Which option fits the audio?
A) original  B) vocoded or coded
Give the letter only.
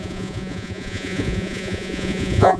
B